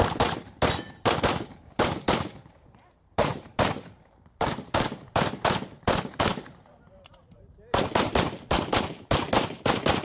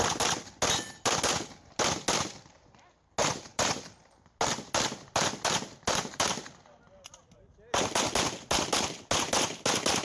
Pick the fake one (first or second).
first